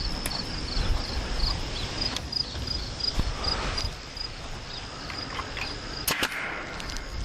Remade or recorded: recorded